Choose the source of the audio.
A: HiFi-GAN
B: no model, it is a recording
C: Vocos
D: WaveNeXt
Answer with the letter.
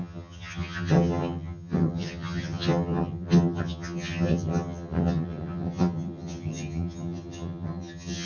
A